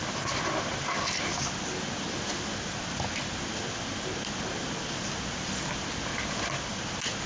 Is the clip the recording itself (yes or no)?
yes